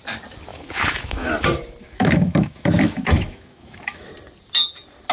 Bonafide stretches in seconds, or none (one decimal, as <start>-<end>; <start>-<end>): 0.0-0.5; 1.3-1.8; 4.1-5.1